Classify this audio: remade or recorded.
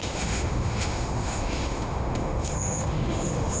remade